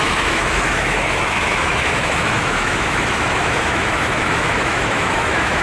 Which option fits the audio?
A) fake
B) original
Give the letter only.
A